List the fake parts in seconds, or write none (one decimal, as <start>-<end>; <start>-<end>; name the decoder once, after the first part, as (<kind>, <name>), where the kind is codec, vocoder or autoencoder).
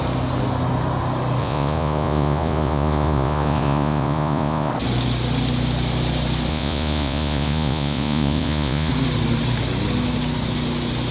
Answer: 1.4-4.7 (vocoder, Vocos); 6.5-8.9